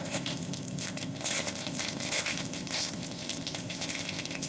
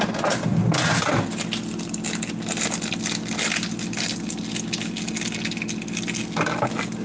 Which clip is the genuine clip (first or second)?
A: second